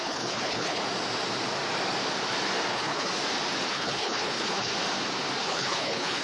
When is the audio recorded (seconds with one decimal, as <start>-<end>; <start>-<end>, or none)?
0.8-2.7; 3.1-3.7; 4.7-5.4